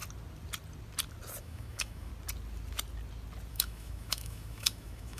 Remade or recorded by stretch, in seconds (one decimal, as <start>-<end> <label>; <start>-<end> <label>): 0.0-1.4 recorded; 1.4-2.1 remade; 2.1-3.5 recorded; 3.5-5.2 remade